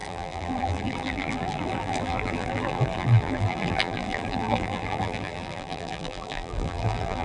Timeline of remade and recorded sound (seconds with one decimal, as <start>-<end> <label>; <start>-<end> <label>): 0.0-7.2 remade